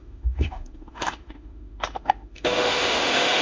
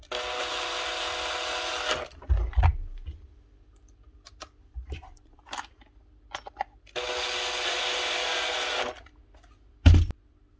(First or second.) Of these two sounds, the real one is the second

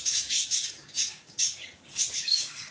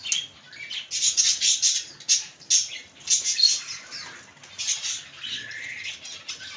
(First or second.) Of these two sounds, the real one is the second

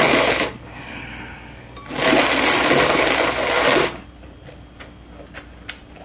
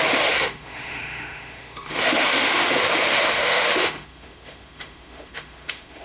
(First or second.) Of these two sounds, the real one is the first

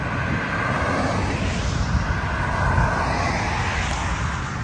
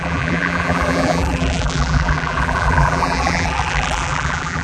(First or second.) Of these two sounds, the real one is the first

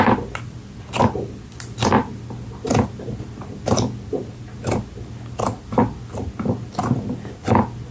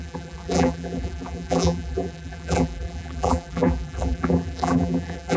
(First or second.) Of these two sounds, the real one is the first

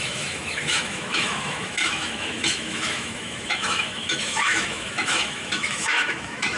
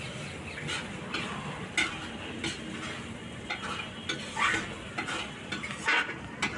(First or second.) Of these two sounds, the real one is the second